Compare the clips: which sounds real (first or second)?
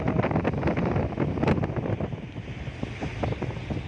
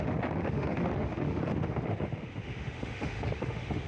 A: first